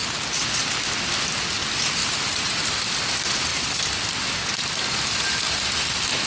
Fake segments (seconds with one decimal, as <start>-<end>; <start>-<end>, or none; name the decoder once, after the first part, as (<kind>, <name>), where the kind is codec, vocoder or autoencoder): none